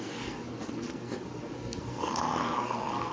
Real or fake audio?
fake